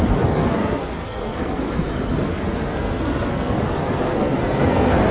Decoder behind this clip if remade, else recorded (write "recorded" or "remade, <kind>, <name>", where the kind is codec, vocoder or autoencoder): remade, codec, SNAC